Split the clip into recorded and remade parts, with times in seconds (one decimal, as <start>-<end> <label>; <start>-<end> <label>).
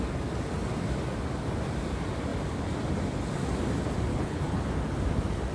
0.0-4.1 recorded; 4.1-4.6 remade; 4.6-5.5 recorded